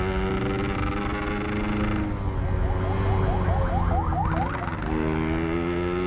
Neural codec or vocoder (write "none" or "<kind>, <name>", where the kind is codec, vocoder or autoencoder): none